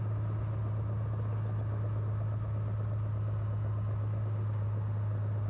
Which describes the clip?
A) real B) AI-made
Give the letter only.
A